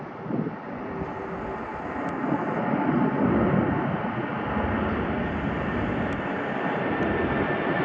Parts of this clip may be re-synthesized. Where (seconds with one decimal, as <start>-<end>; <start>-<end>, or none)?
none